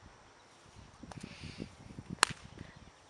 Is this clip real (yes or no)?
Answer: yes